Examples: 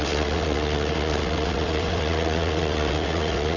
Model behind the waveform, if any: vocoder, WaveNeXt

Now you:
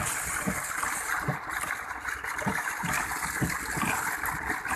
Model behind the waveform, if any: none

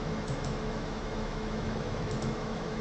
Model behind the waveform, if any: autoencoder, DAC-VAE